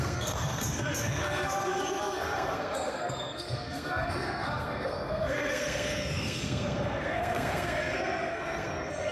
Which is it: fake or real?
fake